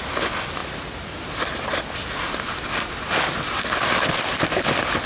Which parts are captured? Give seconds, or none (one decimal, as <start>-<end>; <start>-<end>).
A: 0.0-5.1